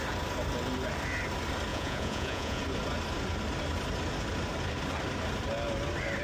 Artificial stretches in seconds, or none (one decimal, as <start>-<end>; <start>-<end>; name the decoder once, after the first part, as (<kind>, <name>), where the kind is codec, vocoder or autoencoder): 1.7-2.6 (vocoder, Vocos)